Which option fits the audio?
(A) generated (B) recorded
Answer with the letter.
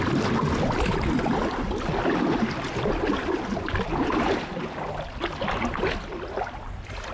B